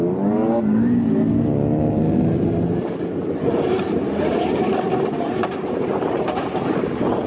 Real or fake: real